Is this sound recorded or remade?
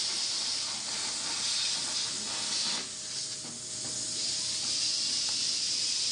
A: recorded